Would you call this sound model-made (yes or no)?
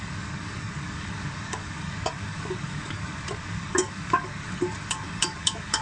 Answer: yes